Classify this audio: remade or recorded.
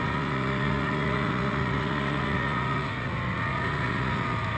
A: remade